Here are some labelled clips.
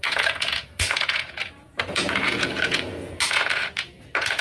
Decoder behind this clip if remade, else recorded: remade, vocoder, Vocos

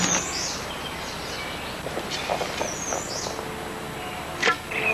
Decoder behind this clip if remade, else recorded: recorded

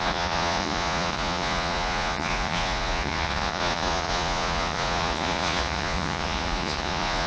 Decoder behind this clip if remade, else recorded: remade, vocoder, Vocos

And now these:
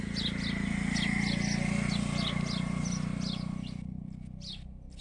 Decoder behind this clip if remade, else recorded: recorded